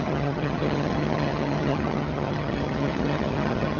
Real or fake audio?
fake